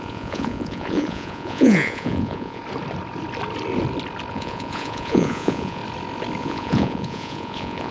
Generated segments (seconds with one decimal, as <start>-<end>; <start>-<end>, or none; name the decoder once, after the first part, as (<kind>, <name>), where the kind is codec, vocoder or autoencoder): 0.0-2.6 (vocoder, Vocos); 4.3-5.8; 6.4-7.9